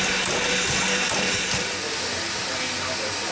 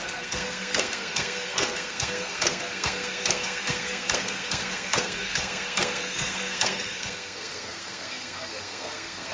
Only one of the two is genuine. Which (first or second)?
first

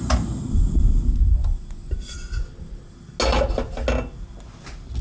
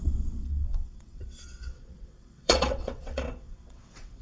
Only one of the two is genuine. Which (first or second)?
first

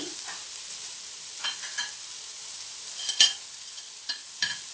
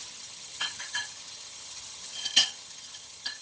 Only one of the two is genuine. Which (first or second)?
first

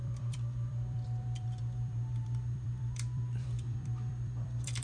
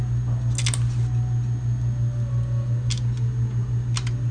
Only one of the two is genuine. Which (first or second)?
second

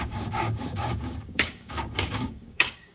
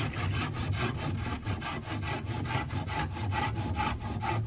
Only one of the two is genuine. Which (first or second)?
second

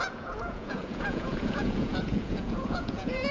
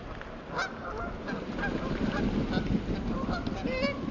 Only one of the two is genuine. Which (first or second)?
second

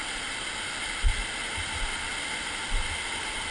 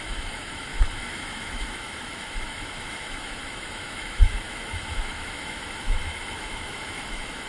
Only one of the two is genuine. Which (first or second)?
first